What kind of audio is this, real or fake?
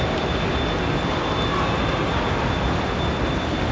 real